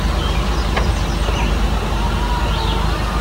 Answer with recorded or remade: recorded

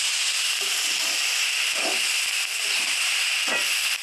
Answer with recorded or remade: recorded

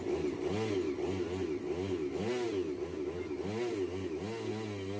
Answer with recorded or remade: recorded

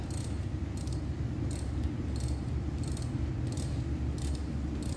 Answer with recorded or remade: recorded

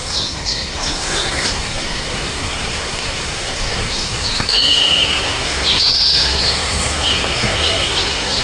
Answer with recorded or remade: remade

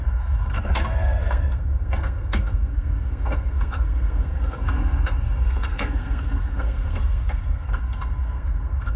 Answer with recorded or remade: remade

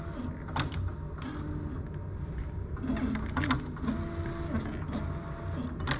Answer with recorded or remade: recorded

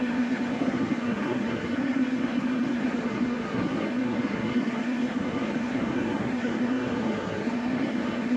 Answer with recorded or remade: remade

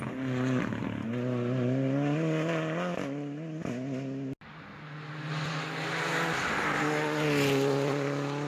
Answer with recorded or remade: recorded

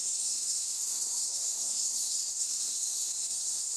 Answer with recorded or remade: remade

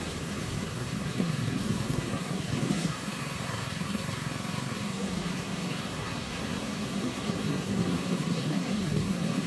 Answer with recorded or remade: remade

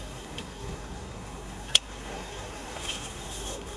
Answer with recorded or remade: remade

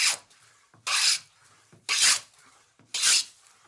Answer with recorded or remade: recorded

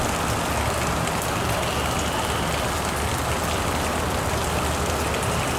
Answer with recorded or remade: recorded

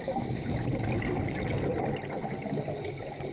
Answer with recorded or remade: recorded